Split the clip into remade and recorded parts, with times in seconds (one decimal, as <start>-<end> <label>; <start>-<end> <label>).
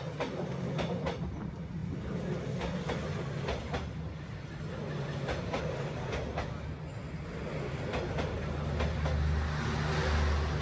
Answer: 0.0-10.6 recorded